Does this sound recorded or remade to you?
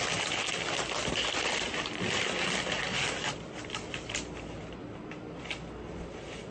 recorded